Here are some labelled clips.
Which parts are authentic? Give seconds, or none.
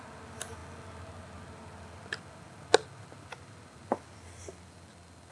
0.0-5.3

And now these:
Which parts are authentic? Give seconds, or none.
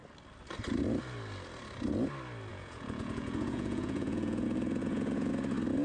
0.0-2.5; 5.3-5.8